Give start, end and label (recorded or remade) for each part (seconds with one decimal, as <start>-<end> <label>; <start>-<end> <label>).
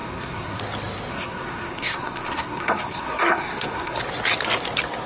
0.0-0.6 remade; 0.6-1.1 recorded; 1.1-4.0 remade; 4.0-5.1 recorded